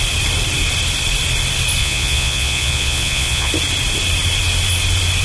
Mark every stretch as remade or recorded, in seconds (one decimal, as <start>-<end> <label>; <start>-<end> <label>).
0.0-1.8 recorded; 1.8-3.5 remade; 3.5-5.2 recorded